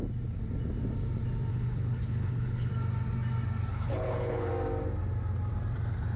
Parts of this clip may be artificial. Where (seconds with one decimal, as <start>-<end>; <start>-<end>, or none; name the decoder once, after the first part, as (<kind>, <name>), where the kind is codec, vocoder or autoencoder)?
1.5-2.7 (codec, HILCodec); 3.7-4.5